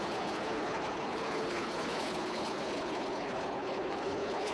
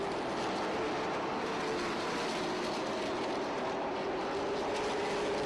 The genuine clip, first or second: second